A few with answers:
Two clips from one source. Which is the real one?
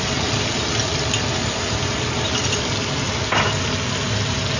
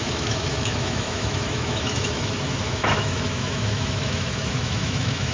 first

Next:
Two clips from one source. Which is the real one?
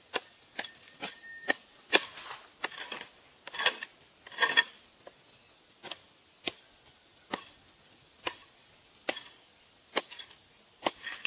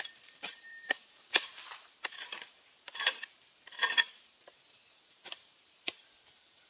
first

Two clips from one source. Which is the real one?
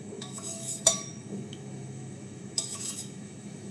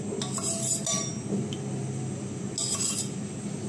second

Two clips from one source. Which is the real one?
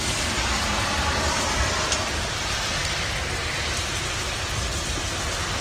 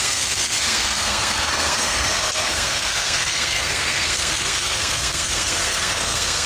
first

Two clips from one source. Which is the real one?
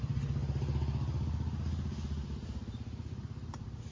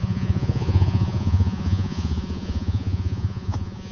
first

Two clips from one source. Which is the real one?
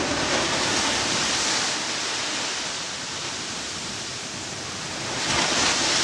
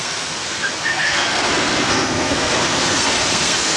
first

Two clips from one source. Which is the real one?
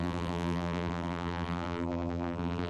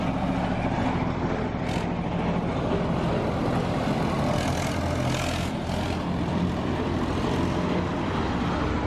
second